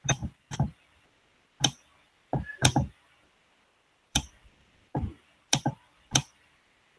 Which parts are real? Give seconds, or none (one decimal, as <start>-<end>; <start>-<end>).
none